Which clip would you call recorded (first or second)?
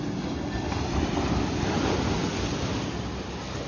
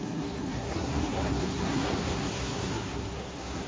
first